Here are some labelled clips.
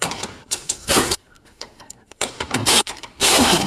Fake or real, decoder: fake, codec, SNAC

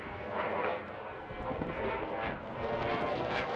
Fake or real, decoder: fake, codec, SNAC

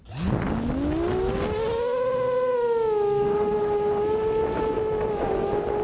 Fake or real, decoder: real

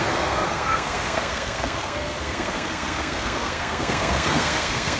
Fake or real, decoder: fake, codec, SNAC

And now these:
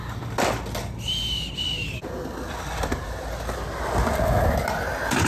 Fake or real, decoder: real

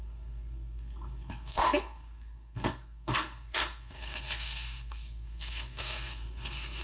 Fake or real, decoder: fake, codec, SNAC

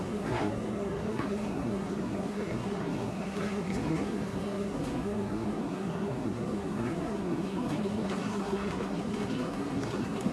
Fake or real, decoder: fake, codec, SNAC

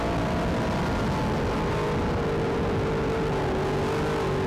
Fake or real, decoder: real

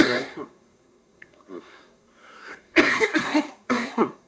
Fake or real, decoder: fake, codec, SNAC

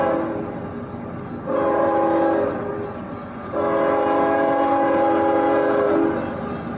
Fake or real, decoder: real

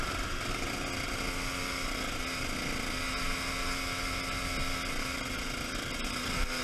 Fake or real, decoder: real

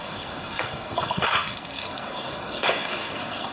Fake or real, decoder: fake, codec, SNAC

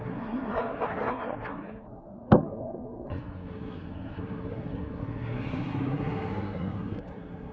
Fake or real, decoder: fake, codec, SNAC